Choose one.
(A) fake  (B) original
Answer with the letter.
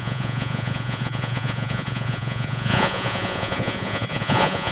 A